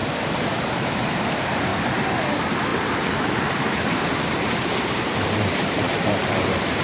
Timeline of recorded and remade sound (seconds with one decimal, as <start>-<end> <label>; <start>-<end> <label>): 0.0-0.5 recorded; 0.5-1.7 remade; 1.7-2.3 recorded; 2.3-6.8 remade